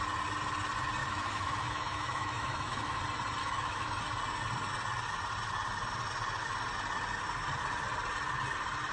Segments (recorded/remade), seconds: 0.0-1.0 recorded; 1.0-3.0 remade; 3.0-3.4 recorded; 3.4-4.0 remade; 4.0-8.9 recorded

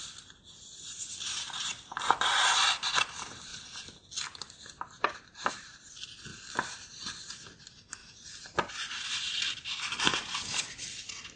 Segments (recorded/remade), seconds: 0.0-8.0 recorded; 8.0-8.7 remade; 8.7-11.4 recorded

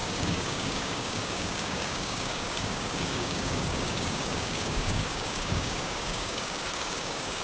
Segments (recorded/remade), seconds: 0.0-7.4 remade